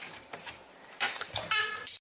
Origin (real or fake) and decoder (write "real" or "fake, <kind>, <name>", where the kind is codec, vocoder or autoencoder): fake, vocoder, BigVGAN v2